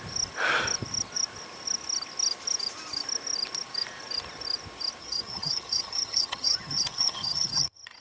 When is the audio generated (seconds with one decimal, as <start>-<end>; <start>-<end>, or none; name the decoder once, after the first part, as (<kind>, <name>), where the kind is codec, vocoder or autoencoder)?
5.0-8.0 (vocoder, HiFi-GAN)